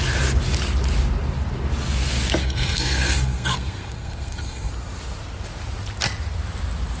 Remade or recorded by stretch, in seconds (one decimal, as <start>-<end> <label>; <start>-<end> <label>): 0.0-2.4 recorded; 2.4-4.7 remade; 4.7-7.0 recorded

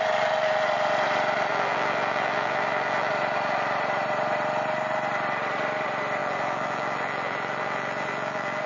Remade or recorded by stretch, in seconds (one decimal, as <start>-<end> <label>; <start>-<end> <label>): 0.0-1.5 recorded; 1.5-3.1 remade; 3.1-6.2 recorded; 6.2-8.7 remade

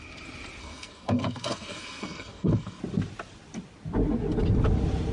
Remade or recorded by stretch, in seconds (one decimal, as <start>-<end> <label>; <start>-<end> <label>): 0.0-0.6 recorded; 0.6-2.8 remade; 2.8-5.1 recorded

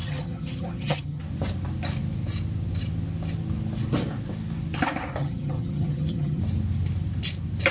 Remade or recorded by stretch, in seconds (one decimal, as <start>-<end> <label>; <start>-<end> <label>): 0.0-1.2 remade; 1.2-5.2 recorded; 5.2-6.4 remade; 6.4-7.7 recorded

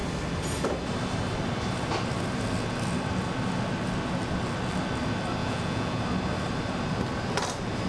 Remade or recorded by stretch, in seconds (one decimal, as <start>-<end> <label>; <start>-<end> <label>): 0.0-5.4 recorded; 5.4-6.0 remade; 6.0-7.9 recorded

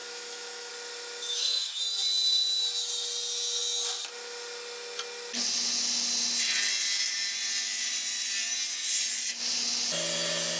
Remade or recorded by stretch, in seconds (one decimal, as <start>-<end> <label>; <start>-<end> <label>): 0.0-0.7 remade; 0.7-1.3 recorded; 1.3-1.8 remade; 1.8-10.6 recorded